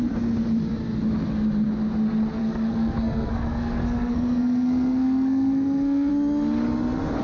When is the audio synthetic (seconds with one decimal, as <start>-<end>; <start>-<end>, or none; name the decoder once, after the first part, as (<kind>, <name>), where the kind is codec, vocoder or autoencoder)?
2.4-6.1 (codec, SNAC)